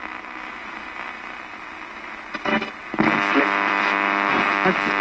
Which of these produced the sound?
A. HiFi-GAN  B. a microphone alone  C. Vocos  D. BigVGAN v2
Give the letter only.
B